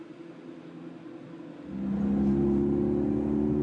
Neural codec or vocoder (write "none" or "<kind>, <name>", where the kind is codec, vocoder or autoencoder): none